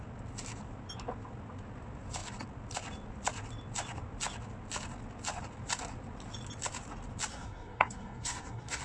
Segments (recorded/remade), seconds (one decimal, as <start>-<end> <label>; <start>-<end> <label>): 0.0-7.3 recorded; 7.3-8.8 remade